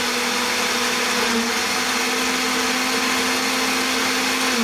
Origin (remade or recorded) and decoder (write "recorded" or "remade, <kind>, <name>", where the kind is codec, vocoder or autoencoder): recorded